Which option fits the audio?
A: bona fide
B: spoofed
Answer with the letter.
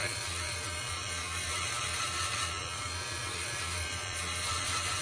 B